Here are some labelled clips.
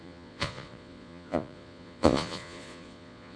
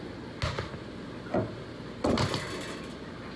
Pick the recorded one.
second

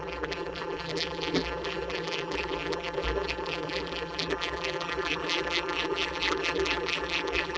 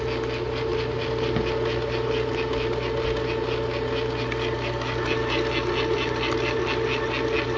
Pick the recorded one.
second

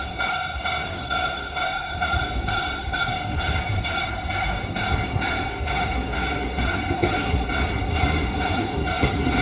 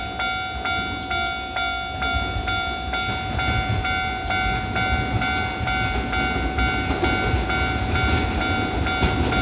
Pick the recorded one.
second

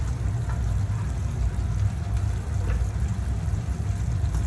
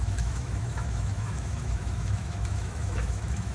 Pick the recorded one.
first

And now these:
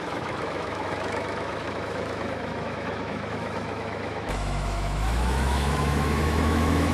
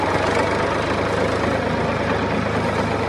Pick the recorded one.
second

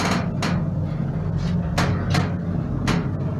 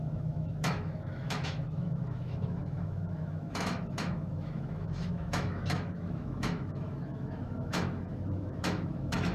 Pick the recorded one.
first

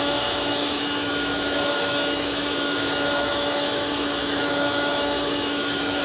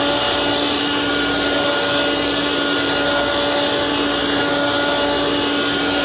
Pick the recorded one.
second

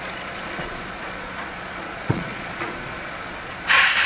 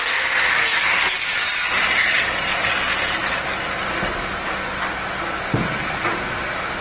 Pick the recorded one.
second